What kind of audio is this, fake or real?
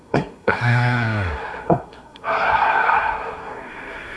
fake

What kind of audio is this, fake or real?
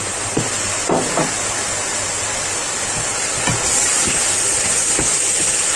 real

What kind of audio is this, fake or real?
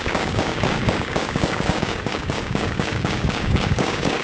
fake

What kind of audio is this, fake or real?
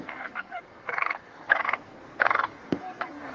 fake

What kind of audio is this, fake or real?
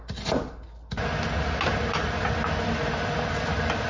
real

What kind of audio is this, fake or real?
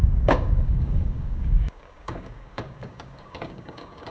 fake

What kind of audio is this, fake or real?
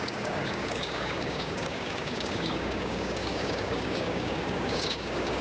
fake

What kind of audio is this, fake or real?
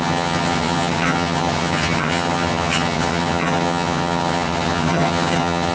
fake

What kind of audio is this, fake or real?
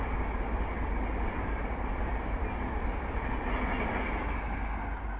real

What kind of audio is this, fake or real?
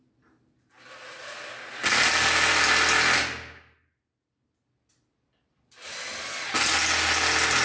real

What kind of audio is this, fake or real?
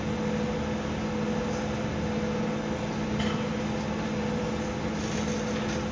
real